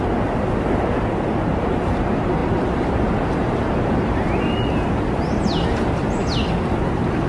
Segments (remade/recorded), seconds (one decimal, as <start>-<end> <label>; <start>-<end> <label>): 0.0-7.3 recorded